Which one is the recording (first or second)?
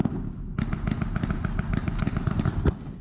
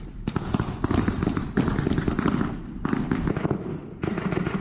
first